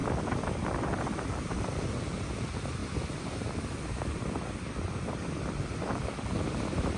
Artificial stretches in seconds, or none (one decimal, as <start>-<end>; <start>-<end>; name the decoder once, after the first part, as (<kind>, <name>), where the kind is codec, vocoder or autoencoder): 0.0-2.8 (vocoder, BigVGAN v2); 3.4-7.0